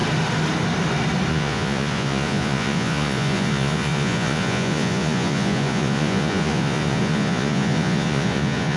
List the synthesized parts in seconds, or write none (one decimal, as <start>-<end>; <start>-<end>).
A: 1.3-8.8